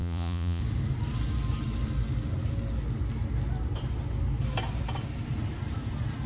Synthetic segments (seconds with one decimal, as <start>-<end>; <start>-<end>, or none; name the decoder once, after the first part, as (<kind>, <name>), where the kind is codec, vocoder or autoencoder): 0.0-0.6 (vocoder, Vocos)